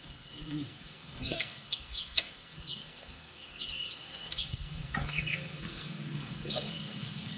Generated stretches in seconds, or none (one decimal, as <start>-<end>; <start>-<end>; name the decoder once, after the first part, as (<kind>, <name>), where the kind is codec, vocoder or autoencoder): 0.0-7.4 (codec, SNAC)